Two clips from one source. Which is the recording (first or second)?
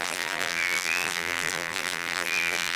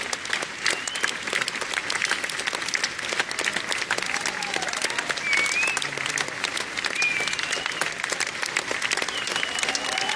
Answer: second